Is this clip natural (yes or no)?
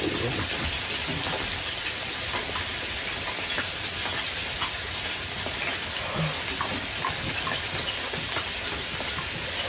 yes